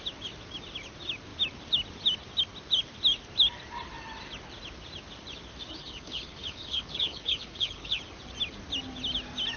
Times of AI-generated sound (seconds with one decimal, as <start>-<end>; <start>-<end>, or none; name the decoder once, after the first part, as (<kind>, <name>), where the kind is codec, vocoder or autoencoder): 5.8-8.0 (codec, HILCodec)